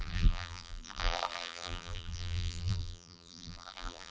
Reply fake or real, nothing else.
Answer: fake